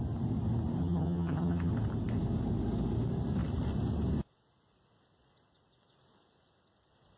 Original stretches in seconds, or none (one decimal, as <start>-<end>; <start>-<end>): 0.0-0.8; 1.7-7.2